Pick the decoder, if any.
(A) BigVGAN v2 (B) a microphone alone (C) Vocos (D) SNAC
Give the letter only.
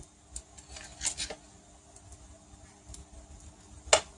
B